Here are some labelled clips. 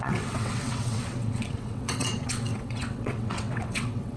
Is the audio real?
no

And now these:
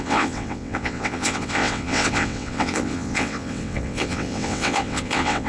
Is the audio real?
no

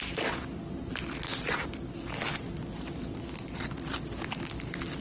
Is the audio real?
yes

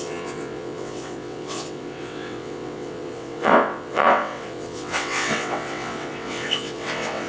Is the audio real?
no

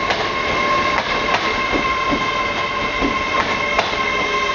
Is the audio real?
yes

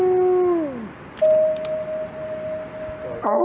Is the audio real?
yes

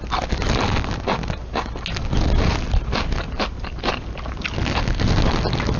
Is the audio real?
yes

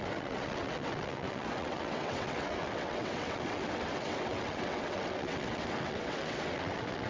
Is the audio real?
no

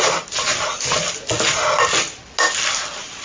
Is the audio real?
yes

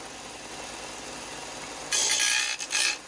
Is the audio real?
yes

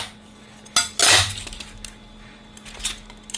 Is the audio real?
yes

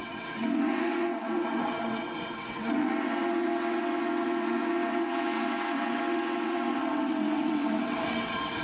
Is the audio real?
no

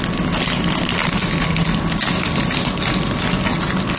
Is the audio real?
yes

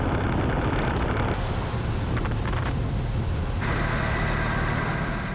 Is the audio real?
yes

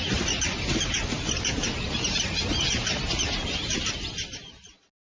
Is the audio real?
yes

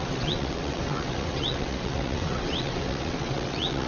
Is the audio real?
no